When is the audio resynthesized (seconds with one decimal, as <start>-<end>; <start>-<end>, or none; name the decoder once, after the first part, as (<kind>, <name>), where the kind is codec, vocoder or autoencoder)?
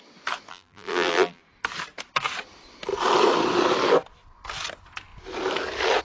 0.5-1.4 (vocoder, BigVGAN v2)